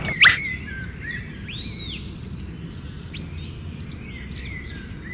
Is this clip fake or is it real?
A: real